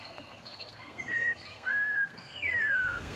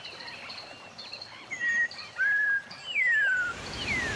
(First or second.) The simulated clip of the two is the first